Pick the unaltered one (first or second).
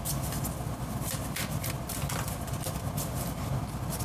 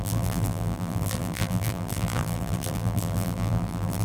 first